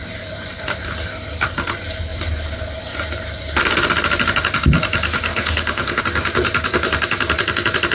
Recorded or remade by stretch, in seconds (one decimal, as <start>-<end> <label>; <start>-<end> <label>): 0.0-5.3 recorded; 5.3-6.0 remade; 6.0-7.9 recorded